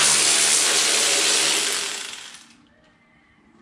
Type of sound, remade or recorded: recorded